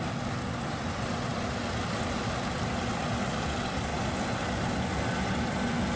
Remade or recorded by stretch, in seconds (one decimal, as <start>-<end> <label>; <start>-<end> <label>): 0.0-6.0 recorded